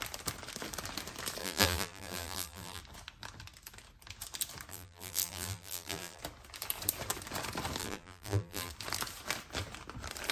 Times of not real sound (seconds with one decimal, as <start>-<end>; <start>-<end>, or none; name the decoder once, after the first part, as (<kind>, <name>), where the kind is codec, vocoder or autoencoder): 1.4-2.8 (vocoder, BigVGAN v2); 4.7-6.2; 7.8-8.7